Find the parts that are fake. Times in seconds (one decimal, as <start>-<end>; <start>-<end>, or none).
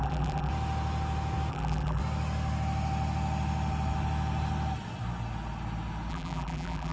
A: 0.0-0.5; 1.5-2.0; 6.1-6.9